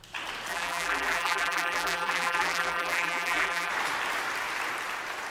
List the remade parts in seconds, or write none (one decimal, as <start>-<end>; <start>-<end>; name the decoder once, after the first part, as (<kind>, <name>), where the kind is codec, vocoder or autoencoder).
0.5-3.7 (vocoder, BigVGAN v2)